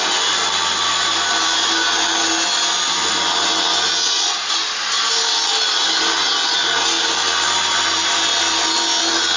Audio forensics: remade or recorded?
recorded